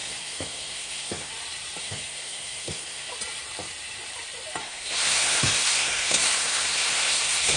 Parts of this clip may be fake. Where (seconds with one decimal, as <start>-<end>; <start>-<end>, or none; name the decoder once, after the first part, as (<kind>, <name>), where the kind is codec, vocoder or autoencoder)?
0.0-1.3 (codec, SNAC); 1.8-3.1; 4.6-7.6